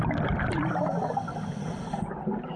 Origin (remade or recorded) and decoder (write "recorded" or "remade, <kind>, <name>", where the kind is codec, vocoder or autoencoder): recorded